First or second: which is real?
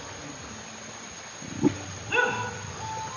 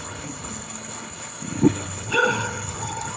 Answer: first